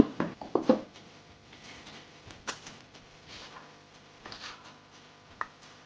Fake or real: fake